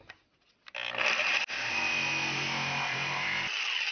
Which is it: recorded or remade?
recorded